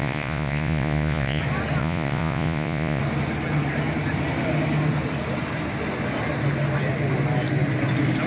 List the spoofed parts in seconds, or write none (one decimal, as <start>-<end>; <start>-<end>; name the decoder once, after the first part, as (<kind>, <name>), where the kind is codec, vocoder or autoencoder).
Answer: 0.0-1.4 (vocoder, Vocos); 1.8-3.0